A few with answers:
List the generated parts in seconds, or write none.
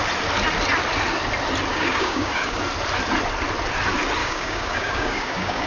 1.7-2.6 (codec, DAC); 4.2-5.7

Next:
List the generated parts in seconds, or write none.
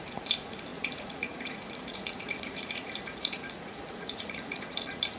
0.0-5.2 (vocoder, Vocos)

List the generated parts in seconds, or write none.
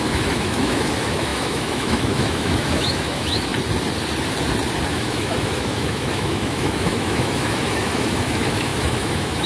0.0-3.5 (autoencoder, DAC-VAE); 4.9-9.5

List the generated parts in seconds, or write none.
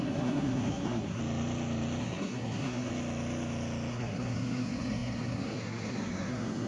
0.0-1.2 (codec, SNAC); 2.0-2.9; 3.9-6.7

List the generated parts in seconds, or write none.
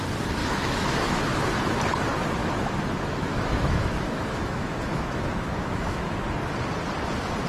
0.4-1.2 (autoencoder, DAC-VAE); 2.4-6.1